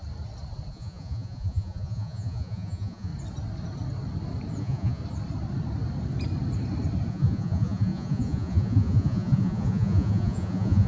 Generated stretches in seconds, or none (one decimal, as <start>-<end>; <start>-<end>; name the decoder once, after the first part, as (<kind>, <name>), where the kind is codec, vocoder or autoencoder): 0.7-3.1 (vocoder, Vocos); 4.6-5.0; 7.1-10.9